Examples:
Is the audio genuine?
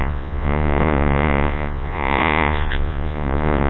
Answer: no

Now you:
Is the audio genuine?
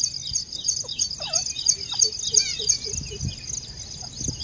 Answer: yes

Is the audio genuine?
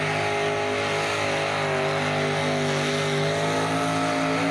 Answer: yes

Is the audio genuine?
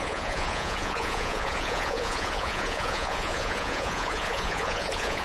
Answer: no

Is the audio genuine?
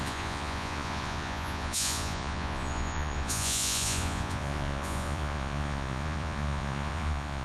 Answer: no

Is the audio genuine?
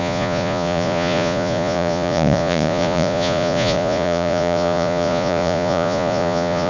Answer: no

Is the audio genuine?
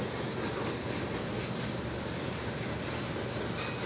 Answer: yes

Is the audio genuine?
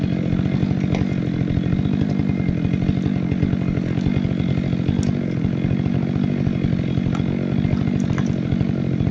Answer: yes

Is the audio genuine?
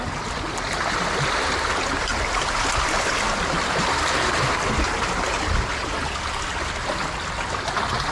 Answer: yes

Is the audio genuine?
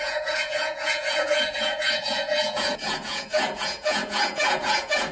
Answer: no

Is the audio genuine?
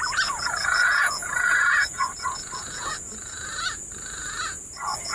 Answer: no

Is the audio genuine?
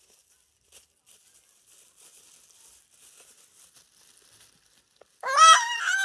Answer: yes